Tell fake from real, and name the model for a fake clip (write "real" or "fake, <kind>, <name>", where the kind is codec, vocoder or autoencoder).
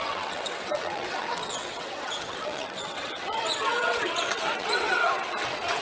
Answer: fake, vocoder, WaveNeXt